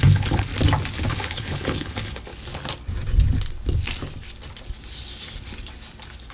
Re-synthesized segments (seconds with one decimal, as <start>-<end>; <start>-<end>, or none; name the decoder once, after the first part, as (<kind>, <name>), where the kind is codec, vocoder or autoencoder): 0.0-0.5 (codec, HILCodec); 1.1-2.3